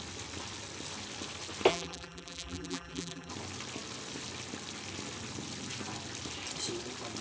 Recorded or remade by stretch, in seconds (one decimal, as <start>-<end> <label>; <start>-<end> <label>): 0.0-1.7 recorded; 1.7-3.3 remade; 3.3-7.2 recorded